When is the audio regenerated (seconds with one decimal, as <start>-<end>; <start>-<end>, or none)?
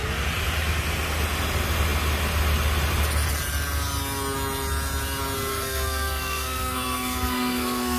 5.5-8.0